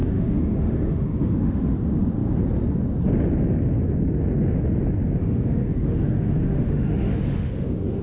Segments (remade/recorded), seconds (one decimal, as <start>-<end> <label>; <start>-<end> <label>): 0.0-1.6 remade; 1.6-5.2 recorded; 5.2-8.0 remade